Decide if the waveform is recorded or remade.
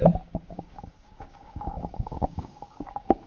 remade